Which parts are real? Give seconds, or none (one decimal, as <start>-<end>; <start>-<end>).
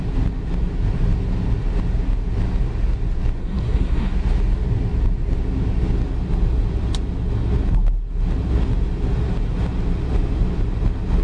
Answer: 0.0-3.4; 4.1-11.2